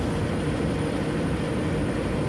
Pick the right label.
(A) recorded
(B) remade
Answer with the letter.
A